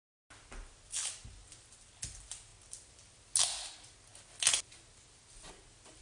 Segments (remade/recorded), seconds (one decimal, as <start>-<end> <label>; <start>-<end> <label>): 0.0-6.0 recorded